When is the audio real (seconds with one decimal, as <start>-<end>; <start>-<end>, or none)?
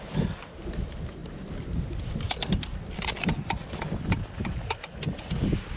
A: 0.0-5.8